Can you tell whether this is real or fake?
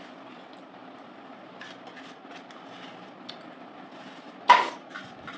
real